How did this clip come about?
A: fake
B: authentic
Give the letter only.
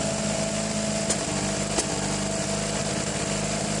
B